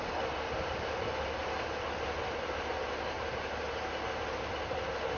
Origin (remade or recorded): recorded